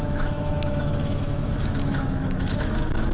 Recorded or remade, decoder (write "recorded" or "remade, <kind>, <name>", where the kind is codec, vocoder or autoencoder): remade, autoencoder, DAC-VAE